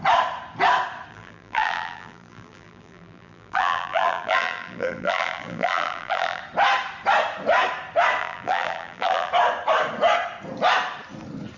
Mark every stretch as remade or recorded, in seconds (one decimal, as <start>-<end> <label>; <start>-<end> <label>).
0.0-1.1 recorded; 1.1-6.4 remade; 6.4-8.2 recorded; 8.2-9.3 remade; 9.3-11.6 recorded